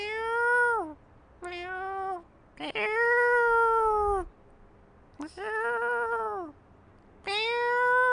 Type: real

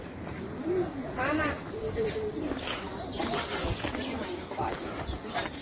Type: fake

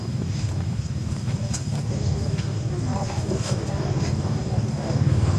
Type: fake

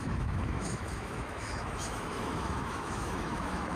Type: fake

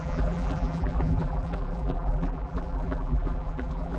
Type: fake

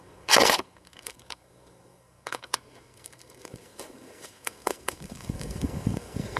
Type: fake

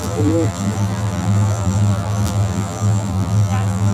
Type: fake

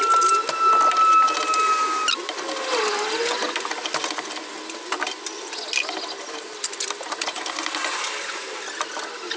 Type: real